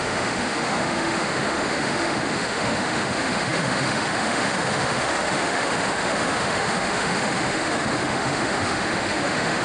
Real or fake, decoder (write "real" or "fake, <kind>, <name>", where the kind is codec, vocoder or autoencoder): fake, autoencoder, DAC-VAE